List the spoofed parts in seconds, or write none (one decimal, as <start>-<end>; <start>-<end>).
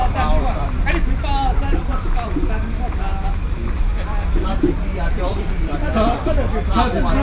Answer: 0.0-0.8; 1.9-6.2